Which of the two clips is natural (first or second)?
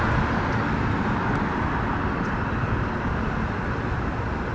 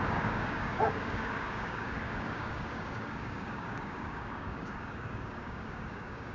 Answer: first